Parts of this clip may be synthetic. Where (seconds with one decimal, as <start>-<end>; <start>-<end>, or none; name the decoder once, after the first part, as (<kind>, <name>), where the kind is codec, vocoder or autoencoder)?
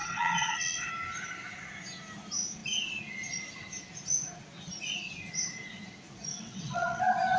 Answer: 0.0-0.9 (vocoder, WaveNeXt); 6.3-7.0